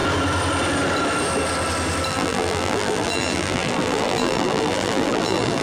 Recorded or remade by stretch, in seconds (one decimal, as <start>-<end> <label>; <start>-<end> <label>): 0.0-2.1 recorded; 2.1-5.6 remade